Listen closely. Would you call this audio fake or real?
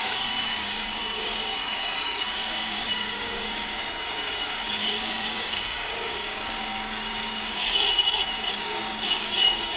fake